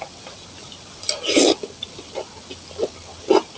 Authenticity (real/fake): real